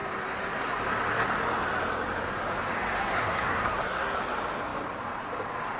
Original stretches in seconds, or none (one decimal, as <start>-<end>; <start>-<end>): 0.0-3.0; 4.2-5.8

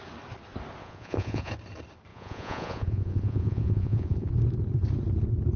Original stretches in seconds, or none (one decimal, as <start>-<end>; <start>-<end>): 0.0-0.8; 1.5-2.1; 4.3-5.6

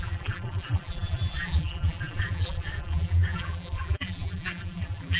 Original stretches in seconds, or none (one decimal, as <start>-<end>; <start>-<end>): none